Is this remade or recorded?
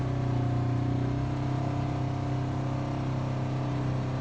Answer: recorded